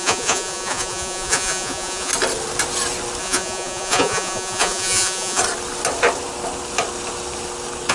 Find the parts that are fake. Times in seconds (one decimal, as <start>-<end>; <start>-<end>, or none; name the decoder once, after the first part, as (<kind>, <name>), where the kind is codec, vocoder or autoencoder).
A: 0.0-2.1 (vocoder, Vocos); 3.2-5.4